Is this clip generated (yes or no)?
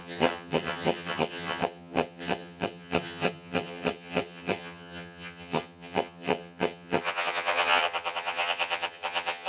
yes